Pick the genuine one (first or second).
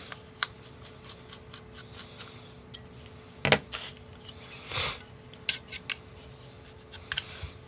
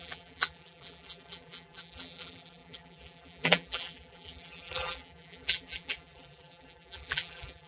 first